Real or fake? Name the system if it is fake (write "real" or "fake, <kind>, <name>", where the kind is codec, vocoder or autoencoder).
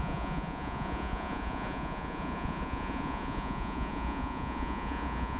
fake, vocoder, Vocos